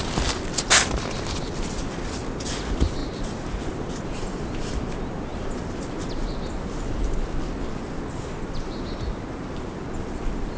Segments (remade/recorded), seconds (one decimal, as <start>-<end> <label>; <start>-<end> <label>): 0.0-10.6 recorded